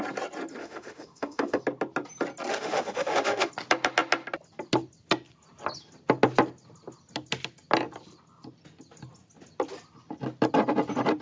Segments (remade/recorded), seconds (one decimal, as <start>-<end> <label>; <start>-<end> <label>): 0.0-0.6 recorded; 0.6-1.6 remade; 1.6-2.5 recorded; 2.5-3.5 remade; 3.5-11.2 recorded